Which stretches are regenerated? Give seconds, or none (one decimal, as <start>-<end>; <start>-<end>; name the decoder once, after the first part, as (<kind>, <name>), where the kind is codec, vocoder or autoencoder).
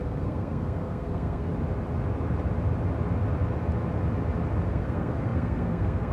0.0-1.5 (codec, SNAC); 4.7-6.1